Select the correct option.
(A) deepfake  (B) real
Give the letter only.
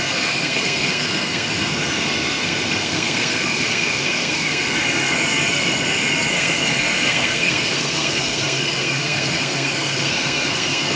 A